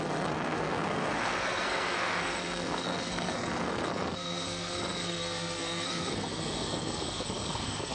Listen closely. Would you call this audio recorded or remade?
remade